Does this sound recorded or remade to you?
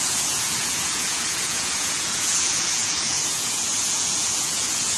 remade